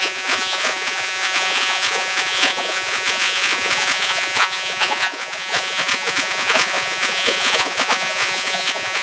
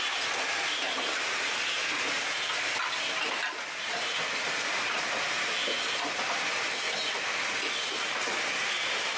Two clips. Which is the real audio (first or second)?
second